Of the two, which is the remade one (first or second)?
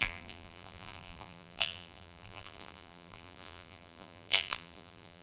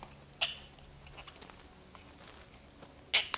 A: first